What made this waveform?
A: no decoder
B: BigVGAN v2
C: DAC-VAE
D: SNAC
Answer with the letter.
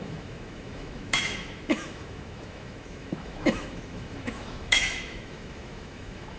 C